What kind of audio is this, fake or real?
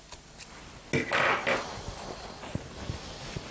real